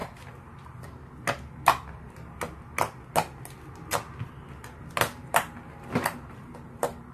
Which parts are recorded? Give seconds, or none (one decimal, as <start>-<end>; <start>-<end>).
0.0-7.1

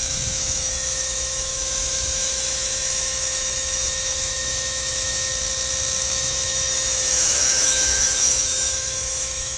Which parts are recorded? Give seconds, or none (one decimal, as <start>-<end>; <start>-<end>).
5.3-6.0

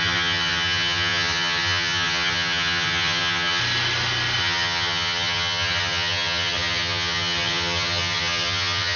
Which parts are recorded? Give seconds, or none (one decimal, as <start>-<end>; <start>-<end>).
3.6-4.4

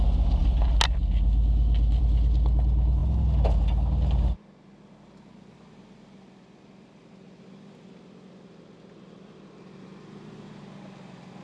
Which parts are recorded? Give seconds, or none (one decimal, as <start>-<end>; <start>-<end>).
0.0-11.4

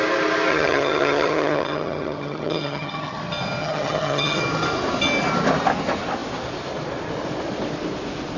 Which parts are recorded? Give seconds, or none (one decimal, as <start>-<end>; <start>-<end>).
0.0-0.5; 3.2-3.6; 4.4-8.4